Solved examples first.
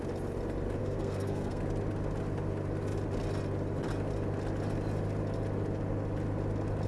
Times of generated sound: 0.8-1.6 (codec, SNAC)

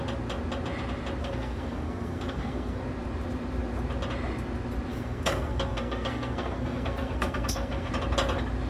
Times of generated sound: 1.2-2.8 (codec, SNAC); 4.9-7.9

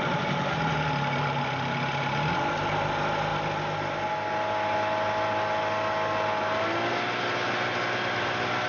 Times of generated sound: none

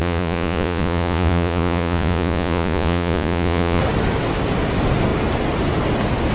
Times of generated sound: 0.0-3.8 (vocoder, Vocos)